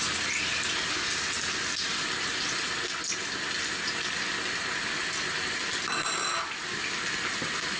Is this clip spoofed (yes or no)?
no